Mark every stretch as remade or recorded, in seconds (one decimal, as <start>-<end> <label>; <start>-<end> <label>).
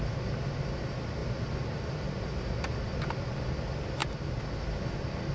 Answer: 0.0-5.3 recorded